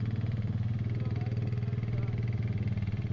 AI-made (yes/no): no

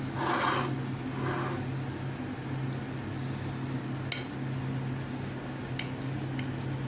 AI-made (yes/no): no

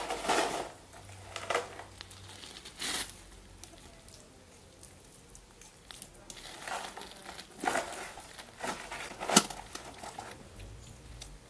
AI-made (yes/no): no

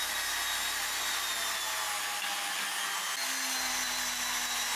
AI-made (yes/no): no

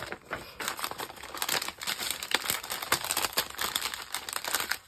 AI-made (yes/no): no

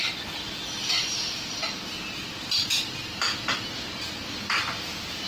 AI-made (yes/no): no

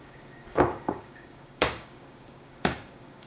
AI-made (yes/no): yes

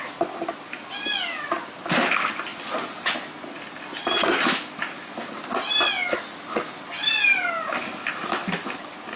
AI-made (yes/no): no